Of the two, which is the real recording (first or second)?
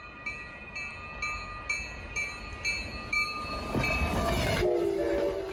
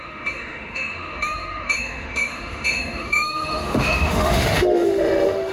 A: first